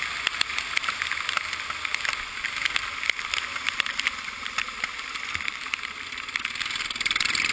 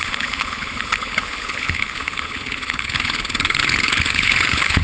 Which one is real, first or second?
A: first